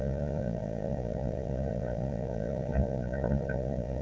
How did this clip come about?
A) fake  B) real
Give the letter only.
A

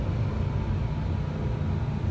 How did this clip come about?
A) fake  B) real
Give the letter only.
B